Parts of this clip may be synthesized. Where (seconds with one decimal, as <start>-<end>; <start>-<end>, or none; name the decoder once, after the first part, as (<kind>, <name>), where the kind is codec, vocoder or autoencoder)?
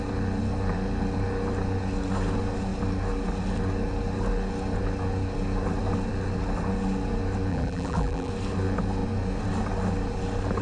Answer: 7.5-8.3 (vocoder, BigVGAN v2)